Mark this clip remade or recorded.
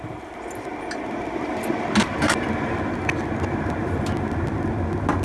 recorded